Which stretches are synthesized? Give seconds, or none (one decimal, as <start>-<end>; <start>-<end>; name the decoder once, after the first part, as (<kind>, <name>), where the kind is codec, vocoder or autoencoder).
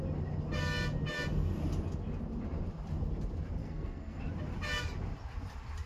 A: 3.6-4.2 (codec, SNAC)